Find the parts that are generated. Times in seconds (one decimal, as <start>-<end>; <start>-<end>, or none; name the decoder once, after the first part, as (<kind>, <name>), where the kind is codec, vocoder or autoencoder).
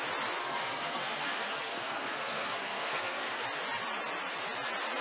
0.4-3.4 (codec, SNAC)